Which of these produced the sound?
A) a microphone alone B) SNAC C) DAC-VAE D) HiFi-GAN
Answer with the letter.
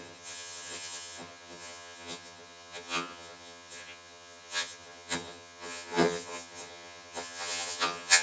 D